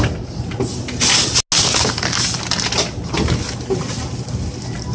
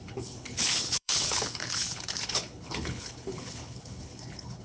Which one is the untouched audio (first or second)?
first